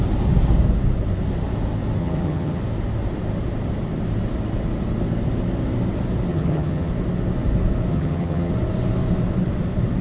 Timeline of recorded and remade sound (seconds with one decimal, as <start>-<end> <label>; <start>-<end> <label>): 0.0-2.0 recorded; 2.0-2.6 remade; 2.6-6.3 recorded; 6.3-6.9 remade; 6.9-7.9 recorded; 7.9-8.5 remade; 8.5-10.0 recorded